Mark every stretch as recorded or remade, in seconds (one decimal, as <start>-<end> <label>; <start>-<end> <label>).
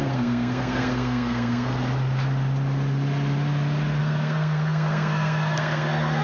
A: 0.0-1.7 remade; 1.7-4.0 recorded; 4.0-6.2 remade